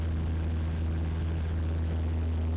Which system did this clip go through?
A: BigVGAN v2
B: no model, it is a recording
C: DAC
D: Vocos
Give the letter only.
B